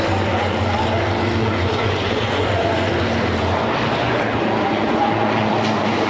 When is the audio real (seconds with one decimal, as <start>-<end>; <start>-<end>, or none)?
0.0-1.4; 2.9-4.0